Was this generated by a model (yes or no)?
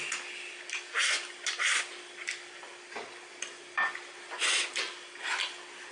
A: no